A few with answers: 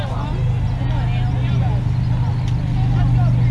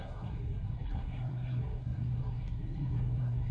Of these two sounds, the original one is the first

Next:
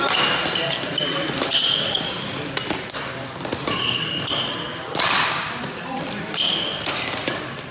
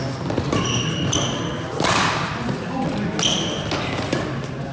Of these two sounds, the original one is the second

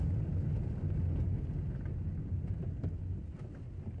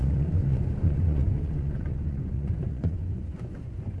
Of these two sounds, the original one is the first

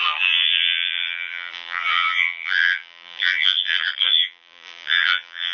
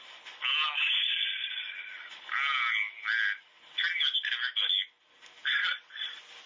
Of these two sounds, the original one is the second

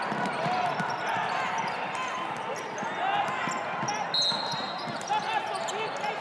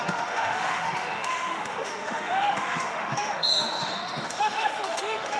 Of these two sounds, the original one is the first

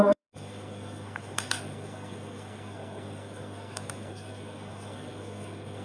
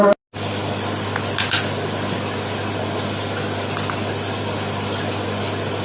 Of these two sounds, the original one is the second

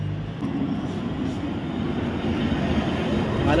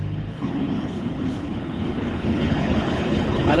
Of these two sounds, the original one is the first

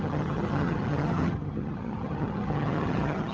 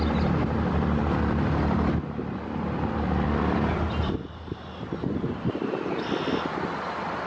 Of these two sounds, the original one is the second